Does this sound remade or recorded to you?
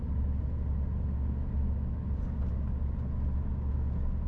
recorded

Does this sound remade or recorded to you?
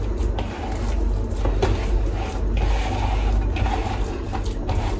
recorded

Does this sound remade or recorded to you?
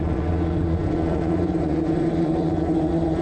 remade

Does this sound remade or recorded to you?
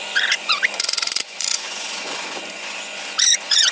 remade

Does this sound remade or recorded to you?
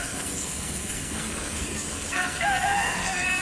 remade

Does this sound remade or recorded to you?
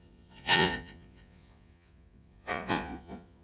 remade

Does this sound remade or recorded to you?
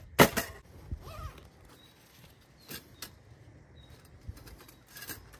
recorded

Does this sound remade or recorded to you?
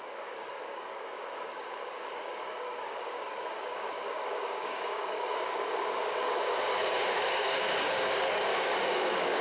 remade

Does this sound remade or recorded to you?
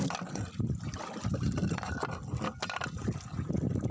recorded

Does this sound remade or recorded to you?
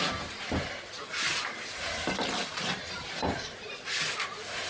recorded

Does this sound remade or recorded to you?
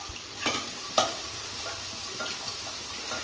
remade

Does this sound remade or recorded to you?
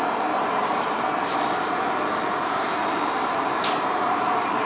remade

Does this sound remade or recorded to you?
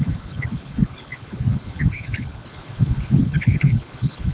remade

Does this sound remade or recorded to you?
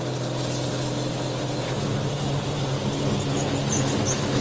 recorded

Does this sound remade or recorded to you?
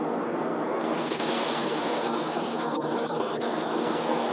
remade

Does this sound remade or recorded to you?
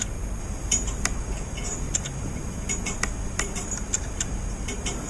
recorded